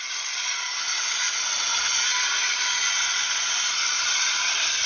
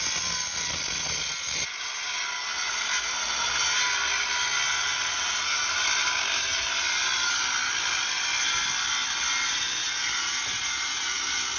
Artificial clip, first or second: first